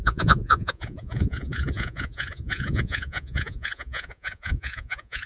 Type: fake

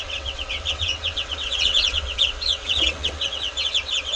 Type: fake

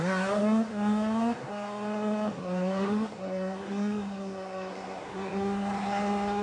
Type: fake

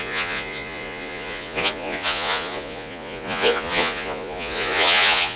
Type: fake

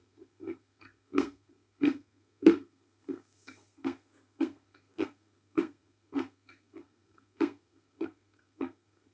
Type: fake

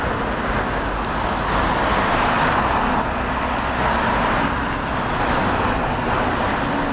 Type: real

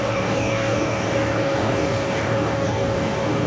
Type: fake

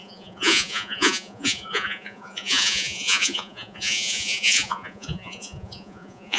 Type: fake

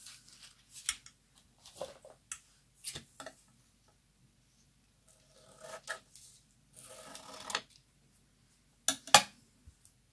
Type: real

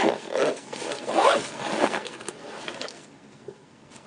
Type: fake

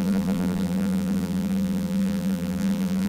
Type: fake